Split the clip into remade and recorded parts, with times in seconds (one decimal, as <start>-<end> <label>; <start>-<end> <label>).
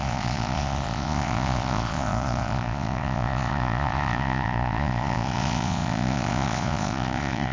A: 0.0-7.5 remade